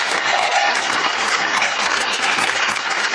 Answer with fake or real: fake